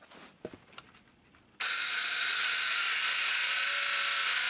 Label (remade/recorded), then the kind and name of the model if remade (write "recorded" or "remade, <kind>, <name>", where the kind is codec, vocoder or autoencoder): recorded